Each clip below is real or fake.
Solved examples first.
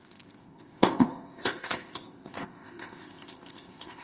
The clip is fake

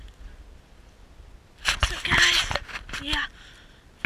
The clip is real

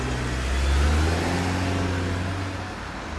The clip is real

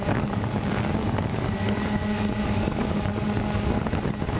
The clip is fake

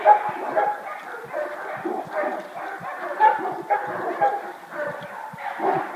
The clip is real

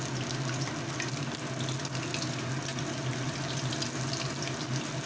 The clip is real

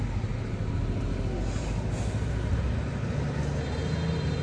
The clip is real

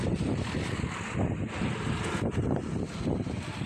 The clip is real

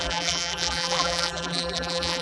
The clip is fake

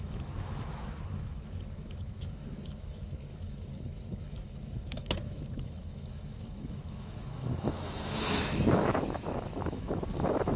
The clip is fake